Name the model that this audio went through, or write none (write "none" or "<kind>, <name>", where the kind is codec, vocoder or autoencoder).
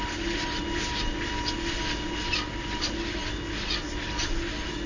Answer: none